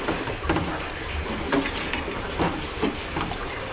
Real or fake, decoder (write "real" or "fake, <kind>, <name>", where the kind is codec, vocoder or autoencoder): real